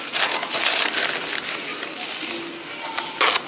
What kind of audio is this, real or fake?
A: real